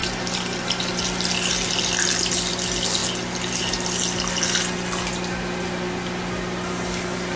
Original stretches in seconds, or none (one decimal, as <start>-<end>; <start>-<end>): 0.0-7.4